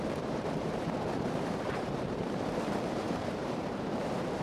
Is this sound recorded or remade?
remade